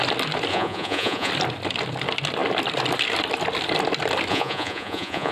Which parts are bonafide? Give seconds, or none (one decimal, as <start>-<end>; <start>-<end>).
0.0-0.5; 1.3-4.3